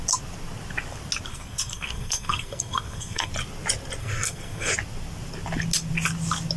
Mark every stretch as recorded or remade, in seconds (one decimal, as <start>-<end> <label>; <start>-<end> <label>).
0.0-1.3 recorded; 1.3-3.3 remade; 3.3-4.0 recorded; 4.0-4.7 remade; 4.7-6.6 recorded